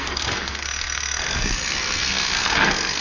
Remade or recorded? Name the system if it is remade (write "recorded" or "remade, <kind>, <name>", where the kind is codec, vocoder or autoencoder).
remade, codec, SNAC